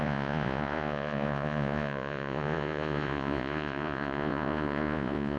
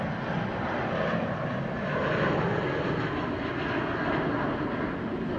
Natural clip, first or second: second